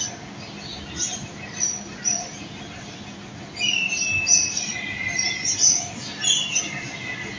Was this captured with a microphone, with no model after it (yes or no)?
yes